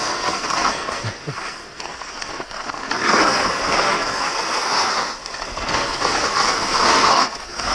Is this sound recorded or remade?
remade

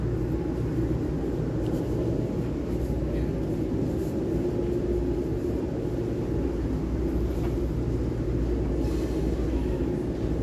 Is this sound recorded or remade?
recorded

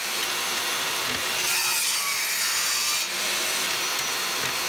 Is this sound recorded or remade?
recorded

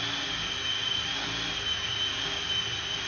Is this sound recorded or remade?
recorded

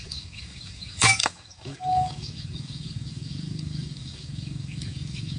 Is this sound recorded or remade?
remade